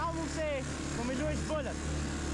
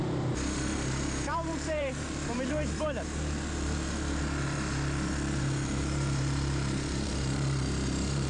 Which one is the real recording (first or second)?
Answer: first